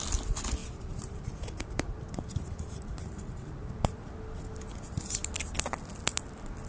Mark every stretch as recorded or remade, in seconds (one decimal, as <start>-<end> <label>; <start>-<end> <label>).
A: 0.0-0.6 recorded; 0.6-4.0 remade; 4.0-6.7 recorded